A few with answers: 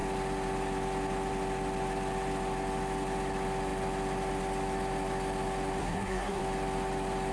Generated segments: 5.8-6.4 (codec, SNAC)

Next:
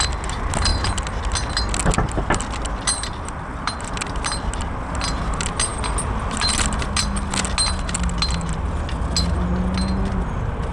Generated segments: none

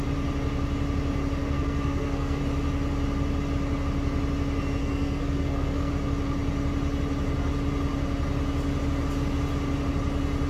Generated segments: 1.4-2.4 (codec, SNAC); 4.8-5.9

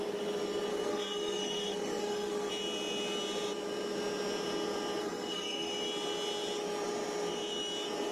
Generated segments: 0.7-2.5 (codec, SNAC); 5.0-5.7

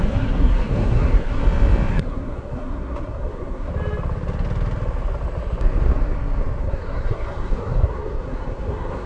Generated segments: 0.0-1.4 (codec, SNAC); 1.9-3.7; 6.6-9.1

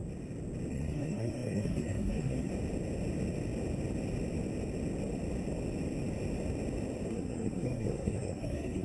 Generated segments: 0.7-2.5 (codec, SNAC); 7.1-8.8

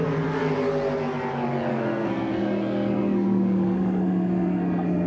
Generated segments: 1.7-5.1 (codec, SNAC)

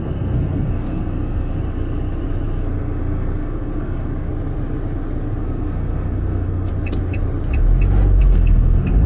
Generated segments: 0.0-1.5 (codec, SNAC); 2.6-4.3; 5.4-6.7; 8.2-9.1